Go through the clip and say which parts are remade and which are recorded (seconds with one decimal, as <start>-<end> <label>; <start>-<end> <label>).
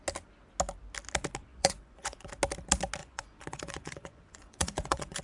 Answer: 0.0-1.5 recorded; 1.5-2.3 remade; 2.3-3.0 recorded; 3.0-5.2 remade